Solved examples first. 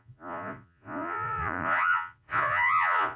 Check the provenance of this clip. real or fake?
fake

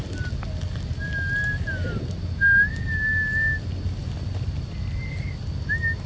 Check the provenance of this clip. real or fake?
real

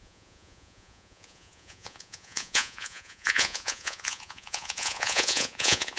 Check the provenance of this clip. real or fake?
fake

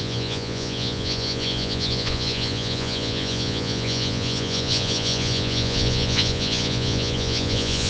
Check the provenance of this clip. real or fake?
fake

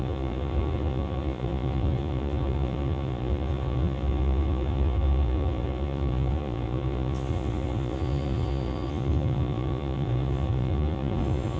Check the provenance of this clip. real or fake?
fake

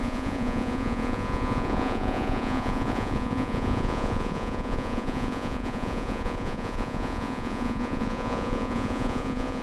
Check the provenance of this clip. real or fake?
fake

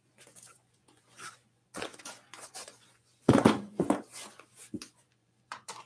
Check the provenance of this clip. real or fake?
fake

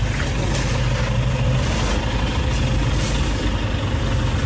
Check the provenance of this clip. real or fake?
real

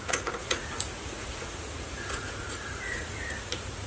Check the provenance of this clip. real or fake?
fake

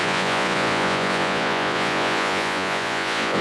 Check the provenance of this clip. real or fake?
fake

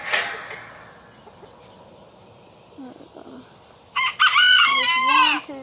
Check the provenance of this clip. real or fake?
real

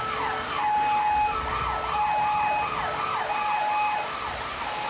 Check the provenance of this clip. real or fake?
real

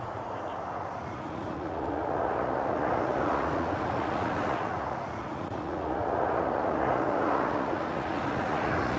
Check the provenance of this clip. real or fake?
fake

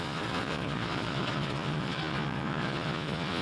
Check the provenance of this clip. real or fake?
fake